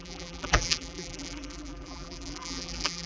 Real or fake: fake